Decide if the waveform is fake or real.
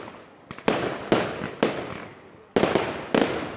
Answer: real